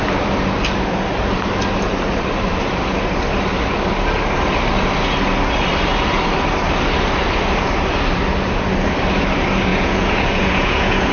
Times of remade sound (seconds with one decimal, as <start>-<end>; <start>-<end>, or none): 9.7-11.1